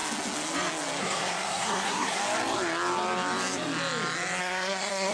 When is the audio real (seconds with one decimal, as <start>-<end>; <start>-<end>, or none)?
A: 0.0-1.0; 2.2-4.4